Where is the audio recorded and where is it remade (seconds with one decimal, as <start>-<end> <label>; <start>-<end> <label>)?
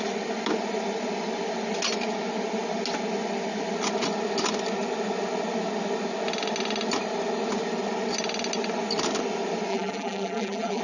0.0-9.7 recorded; 9.7-10.8 remade